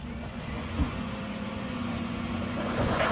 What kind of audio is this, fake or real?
fake